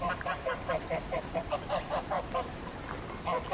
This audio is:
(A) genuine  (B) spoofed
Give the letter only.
B